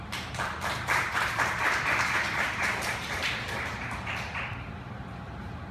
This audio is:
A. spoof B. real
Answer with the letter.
A